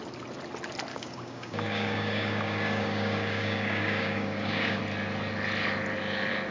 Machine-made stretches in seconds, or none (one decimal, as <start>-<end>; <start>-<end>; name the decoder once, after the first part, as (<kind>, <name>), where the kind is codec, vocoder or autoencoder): 0.9-4.8 (codec, DAC)